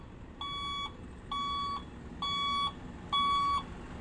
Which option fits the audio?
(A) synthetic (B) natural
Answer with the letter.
B